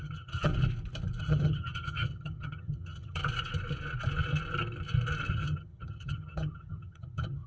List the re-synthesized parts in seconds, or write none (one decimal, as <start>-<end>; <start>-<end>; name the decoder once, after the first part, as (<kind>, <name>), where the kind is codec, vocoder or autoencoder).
0.0-0.5 (vocoder, HiFi-GAN); 1.2-3.2; 5.3-7.5